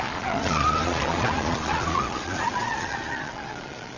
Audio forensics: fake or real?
fake